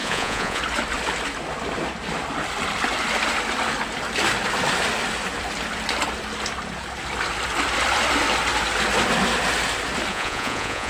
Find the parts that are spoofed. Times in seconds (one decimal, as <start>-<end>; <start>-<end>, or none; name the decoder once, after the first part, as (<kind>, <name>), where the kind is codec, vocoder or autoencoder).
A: 0.0-0.6 (vocoder, Vocos); 10.1-10.9